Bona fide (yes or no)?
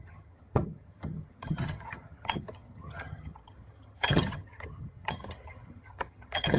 no